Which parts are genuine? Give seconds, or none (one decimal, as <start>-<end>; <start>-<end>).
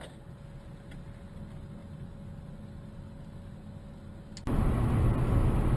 0.0-5.8